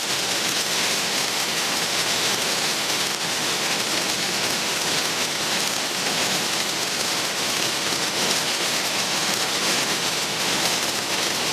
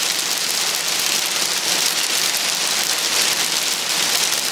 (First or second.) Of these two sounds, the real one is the second